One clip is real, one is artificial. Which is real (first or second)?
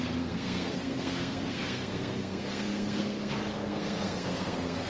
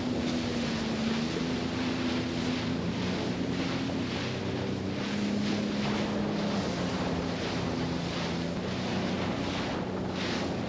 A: second